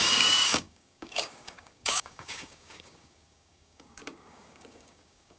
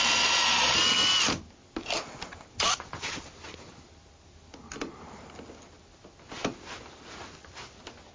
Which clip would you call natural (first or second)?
second